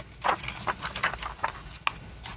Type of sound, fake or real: real